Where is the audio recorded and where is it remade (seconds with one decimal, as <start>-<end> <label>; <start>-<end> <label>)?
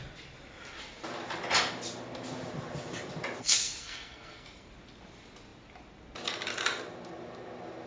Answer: 0.0-3.4 recorded; 3.4-4.7 remade; 4.7-7.9 recorded